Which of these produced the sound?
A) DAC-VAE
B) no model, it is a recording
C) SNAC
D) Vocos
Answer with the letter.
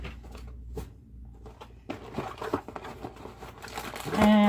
B